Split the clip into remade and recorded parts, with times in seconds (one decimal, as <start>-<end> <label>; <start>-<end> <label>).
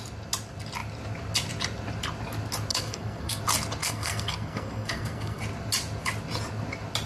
0.0-2.7 recorded; 2.7-3.4 remade; 3.4-3.8 recorded; 3.8-5.4 remade; 5.4-7.1 recorded